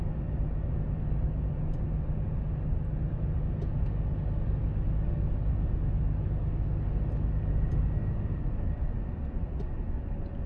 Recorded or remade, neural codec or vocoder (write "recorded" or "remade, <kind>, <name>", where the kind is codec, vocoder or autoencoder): recorded